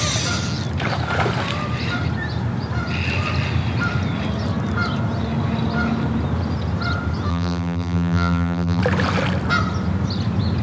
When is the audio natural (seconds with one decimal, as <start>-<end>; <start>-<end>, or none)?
0.0-7.3; 8.8-10.6